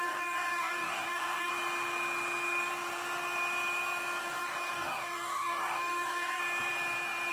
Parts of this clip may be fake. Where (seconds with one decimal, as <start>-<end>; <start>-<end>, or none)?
0.0-1.5; 4.2-6.4